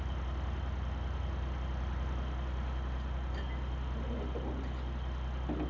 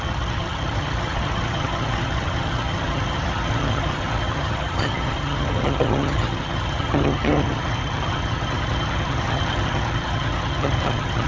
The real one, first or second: first